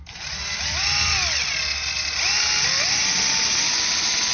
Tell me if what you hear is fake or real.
real